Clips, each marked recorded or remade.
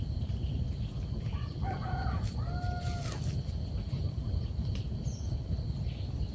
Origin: recorded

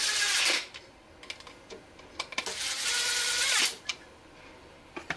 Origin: recorded